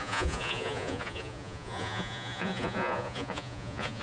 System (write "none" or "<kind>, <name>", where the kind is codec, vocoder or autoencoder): vocoder, Vocos